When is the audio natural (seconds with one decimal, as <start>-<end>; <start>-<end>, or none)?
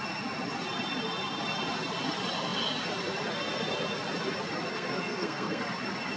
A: 0.0-4.7; 5.6-6.2